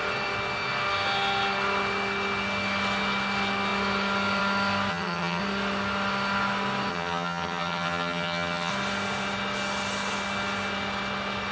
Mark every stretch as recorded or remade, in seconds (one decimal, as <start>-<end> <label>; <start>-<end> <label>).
0.0-4.9 recorded; 4.9-5.4 remade; 5.4-6.9 recorded; 6.9-8.7 remade; 8.7-11.5 recorded